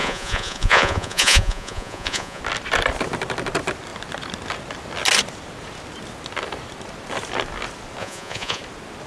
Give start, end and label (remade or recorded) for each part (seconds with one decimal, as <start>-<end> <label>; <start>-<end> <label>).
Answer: 0.0-2.4 remade; 2.4-8.0 recorded; 8.0-8.6 remade; 8.6-9.1 recorded